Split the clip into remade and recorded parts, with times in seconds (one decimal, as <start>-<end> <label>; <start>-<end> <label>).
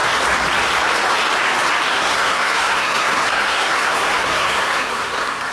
0.0-1.9 recorded; 1.9-5.5 remade